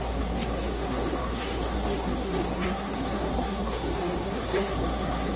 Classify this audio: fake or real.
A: fake